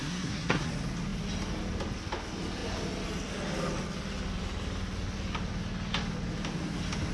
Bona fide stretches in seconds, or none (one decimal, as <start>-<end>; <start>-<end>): 0.7-7.1